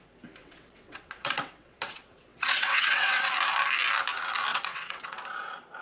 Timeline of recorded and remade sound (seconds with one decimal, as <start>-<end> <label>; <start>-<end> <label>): 0.0-0.4 recorded; 0.4-3.3 remade; 3.3-4.5 recorded; 4.5-5.2 remade; 5.2-5.8 recorded